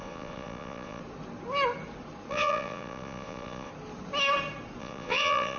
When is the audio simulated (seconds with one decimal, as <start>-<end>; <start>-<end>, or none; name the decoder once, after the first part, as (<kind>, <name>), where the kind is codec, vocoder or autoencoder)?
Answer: 0.0-1.0 (vocoder, Vocos); 2.3-3.7; 4.8-5.6